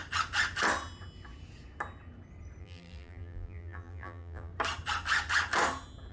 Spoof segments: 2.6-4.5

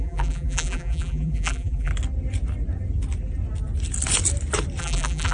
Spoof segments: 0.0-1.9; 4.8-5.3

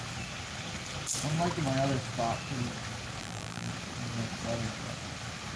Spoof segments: 3.2-3.7

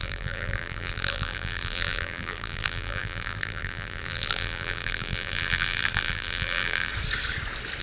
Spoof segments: 0.0-6.9